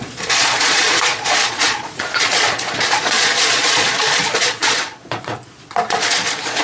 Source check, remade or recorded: remade